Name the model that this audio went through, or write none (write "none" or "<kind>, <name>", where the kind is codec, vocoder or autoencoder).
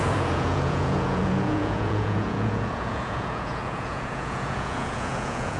vocoder, Vocos